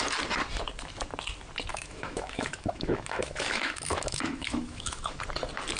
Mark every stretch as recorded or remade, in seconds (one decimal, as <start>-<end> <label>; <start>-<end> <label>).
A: 0.0-1.7 recorded; 1.7-5.2 remade; 5.2-5.8 recorded